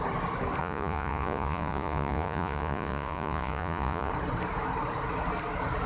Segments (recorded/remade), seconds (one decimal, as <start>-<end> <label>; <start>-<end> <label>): 0.0-0.6 recorded; 0.6-4.1 remade; 4.1-5.9 recorded

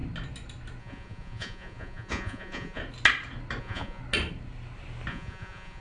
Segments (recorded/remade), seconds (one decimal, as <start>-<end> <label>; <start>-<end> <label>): 0.0-0.8 recorded; 0.8-2.8 remade; 2.8-3.6 recorded; 3.6-4.0 remade; 4.0-5.1 recorded; 5.1-5.8 remade